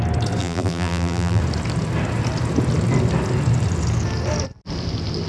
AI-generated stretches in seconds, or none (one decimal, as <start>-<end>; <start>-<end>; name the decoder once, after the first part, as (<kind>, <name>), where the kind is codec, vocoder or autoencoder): 0.4-1.4 (vocoder, BigVGAN v2)

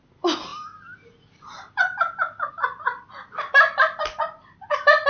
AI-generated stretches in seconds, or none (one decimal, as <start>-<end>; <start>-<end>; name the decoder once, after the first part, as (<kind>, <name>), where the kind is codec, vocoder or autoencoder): none

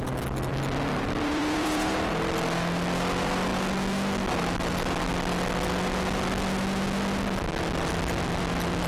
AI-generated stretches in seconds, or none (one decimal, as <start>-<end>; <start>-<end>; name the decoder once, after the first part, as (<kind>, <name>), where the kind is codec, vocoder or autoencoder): 0.5-1.9 (vocoder, BigVGAN v2)

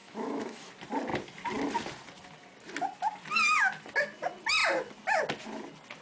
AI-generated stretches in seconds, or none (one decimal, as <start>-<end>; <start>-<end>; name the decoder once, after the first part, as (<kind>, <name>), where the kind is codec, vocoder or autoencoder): 0.0-0.7 (autoencoder, DAC-VAE)

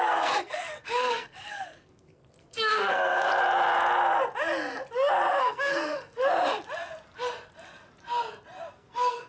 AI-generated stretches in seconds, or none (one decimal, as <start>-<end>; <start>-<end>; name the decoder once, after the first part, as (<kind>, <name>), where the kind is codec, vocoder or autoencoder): 0.0-3.3 (codec, SNAC); 5.4-6.2; 8.7-9.3